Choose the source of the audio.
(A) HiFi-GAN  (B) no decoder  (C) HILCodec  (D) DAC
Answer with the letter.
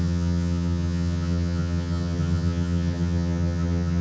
A